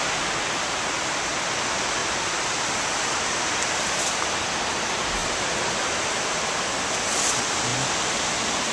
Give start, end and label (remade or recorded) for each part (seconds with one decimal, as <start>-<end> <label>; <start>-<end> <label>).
0.0-2.0 recorded; 2.0-4.1 remade; 4.1-5.2 recorded; 5.2-6.9 remade; 6.9-8.7 recorded